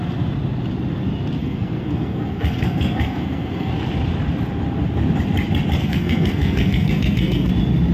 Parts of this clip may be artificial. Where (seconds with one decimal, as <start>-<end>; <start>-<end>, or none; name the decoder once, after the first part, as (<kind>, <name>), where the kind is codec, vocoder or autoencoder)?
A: 1.4-3.7 (codec, SNAC); 5.8-7.5

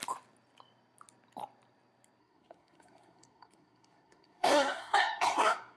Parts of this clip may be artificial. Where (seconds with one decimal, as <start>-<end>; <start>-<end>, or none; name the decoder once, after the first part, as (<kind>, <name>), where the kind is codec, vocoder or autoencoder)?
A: 2.2-5.8 (codec, SNAC)

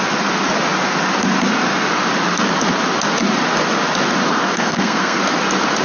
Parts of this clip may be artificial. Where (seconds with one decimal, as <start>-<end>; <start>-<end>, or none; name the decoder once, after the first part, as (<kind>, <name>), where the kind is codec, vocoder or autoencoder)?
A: 4.3-5.2 (codec, SNAC)

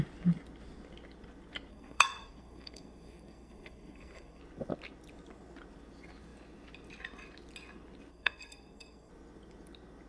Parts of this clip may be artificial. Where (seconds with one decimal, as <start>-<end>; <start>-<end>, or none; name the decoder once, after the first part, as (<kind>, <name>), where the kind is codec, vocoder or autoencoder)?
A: 1.7-4.4 (codec, SNAC); 8.1-9.1

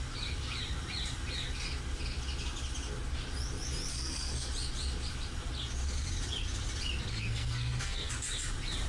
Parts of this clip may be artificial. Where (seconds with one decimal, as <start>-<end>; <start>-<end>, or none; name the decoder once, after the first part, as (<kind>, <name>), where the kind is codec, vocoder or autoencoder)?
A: 3.9-4.5 (codec, SNAC); 7.1-8.1

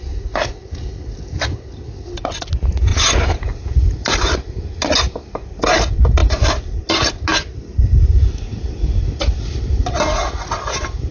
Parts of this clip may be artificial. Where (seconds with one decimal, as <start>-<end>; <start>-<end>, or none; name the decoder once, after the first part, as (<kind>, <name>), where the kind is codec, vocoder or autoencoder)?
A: none

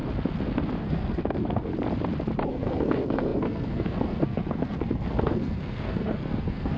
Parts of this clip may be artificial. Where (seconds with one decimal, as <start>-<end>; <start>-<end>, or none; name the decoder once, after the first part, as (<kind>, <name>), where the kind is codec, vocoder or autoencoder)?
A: 0.8-1.7 (codec, SNAC); 2.5-6.8

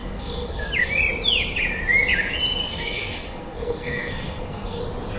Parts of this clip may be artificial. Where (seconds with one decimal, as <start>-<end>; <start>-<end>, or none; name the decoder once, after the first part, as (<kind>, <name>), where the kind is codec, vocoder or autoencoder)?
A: 0.0-0.7 (codec, SNAC); 2.6-4.8